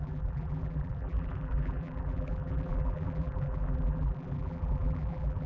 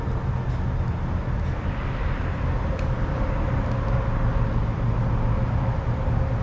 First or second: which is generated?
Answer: first